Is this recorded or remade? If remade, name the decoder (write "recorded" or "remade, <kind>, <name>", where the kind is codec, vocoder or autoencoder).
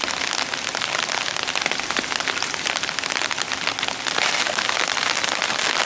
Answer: recorded